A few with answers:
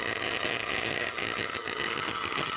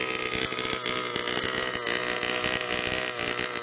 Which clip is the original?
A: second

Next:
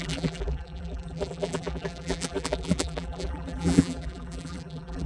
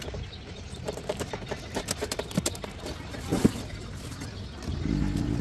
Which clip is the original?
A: second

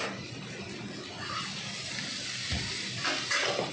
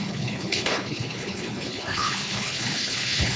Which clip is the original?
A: first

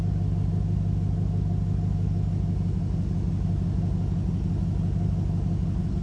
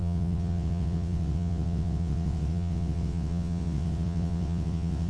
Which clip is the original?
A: first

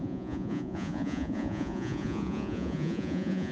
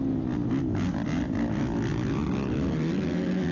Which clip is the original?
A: second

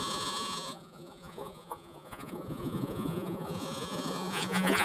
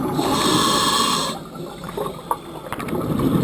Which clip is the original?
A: second